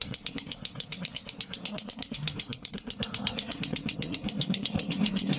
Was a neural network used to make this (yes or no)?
yes